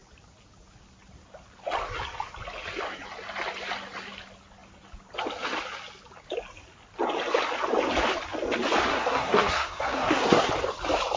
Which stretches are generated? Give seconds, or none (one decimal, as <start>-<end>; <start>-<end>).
8.9-10.5